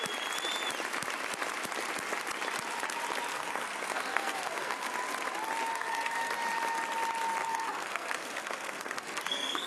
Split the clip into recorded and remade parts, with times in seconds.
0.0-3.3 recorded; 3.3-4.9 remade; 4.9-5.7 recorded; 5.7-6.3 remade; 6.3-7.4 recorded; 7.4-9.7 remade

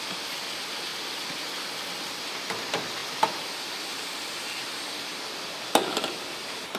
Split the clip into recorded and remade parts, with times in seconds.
0.0-3.0 recorded; 3.0-6.8 remade

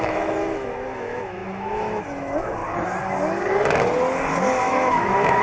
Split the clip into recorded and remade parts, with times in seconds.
0.0-2.6 remade; 2.6-4.6 recorded; 4.6-5.4 remade

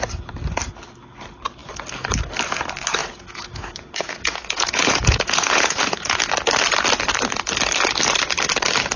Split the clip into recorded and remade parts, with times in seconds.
0.0-3.0 recorded; 3.0-6.2 remade; 6.2-9.0 recorded

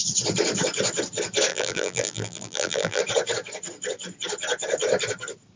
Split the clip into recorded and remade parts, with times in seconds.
0.0-1.5 recorded; 1.5-3.0 remade; 3.0-5.6 recorded

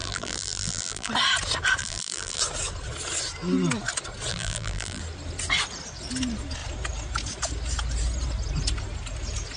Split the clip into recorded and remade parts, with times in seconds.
0.0-1.1 remade; 1.1-1.8 recorded; 1.8-2.4 remade; 2.4-4.3 recorded; 4.3-5.0 remade; 5.0-9.6 recorded

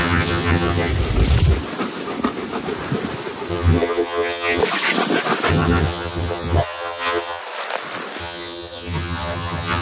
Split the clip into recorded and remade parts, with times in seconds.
0.0-0.9 remade; 0.9-3.5 recorded; 3.5-4.6 remade; 4.6-5.5 recorded; 5.5-7.4 remade; 7.4-8.2 recorded; 8.2-9.8 remade